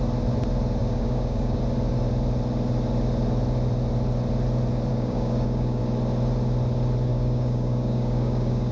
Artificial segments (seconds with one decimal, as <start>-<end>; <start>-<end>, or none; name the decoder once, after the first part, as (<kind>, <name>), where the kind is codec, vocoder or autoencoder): 0.8-1.6 (codec, DAC); 4.9-5.8; 7.1-8.7